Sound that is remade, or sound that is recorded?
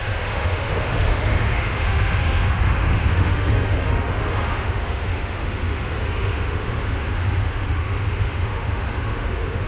remade